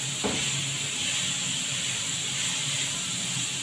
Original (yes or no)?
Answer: yes